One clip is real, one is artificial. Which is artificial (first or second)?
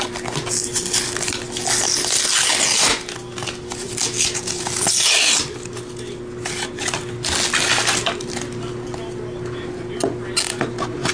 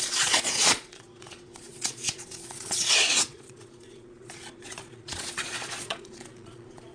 second